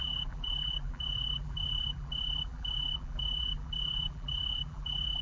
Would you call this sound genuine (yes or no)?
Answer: no